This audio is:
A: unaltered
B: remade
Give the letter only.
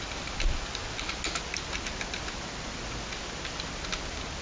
A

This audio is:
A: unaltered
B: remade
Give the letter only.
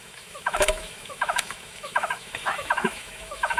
B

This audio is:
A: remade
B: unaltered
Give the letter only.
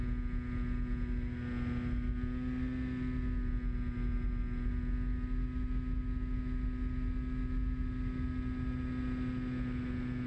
B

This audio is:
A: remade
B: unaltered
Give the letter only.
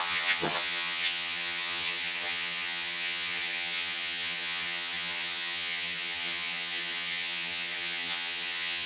A